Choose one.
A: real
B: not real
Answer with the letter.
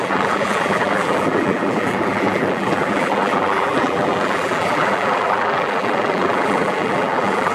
B